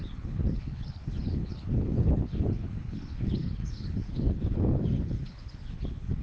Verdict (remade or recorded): remade